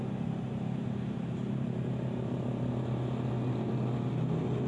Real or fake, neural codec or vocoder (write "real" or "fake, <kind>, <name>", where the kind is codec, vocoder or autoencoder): real